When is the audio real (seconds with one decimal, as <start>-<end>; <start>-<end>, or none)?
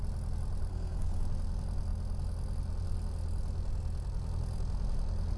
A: 0.0-0.7; 1.2-5.4